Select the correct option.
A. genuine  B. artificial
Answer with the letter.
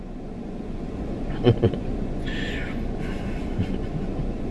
B